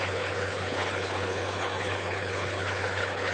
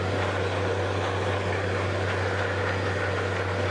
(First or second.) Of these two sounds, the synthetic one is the first